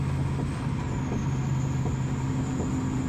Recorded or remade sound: recorded